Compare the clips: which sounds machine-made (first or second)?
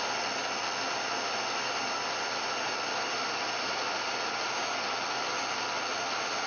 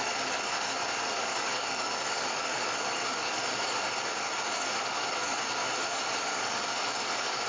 second